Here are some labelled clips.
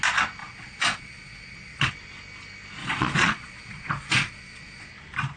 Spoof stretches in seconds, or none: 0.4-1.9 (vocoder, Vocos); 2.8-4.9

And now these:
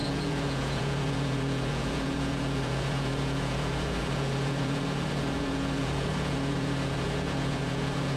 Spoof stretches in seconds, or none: 0.0-8.2 (vocoder, Vocos)

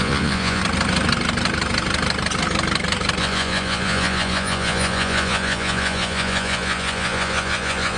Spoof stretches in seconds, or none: 0.0-0.6 (vocoder, Vocos); 3.2-8.0

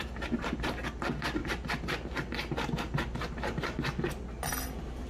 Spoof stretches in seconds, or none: none

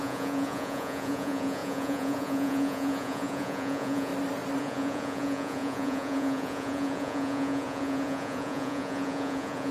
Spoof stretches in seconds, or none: 0.0-4.1 (vocoder, Vocos); 4.6-9.7

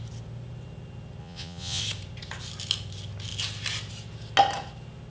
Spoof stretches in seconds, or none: 1.2-1.8 (vocoder, Vocos)

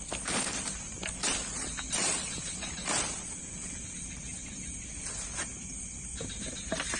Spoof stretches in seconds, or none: none